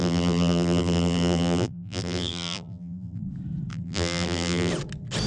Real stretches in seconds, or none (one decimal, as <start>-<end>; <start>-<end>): 3.2-3.7; 4.7-5.3